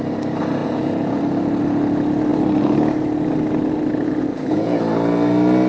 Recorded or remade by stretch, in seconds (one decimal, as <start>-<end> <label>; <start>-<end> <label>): 0.0-0.6 recorded; 0.6-1.2 remade; 1.2-4.3 recorded; 4.3-4.8 remade; 4.8-5.7 recorded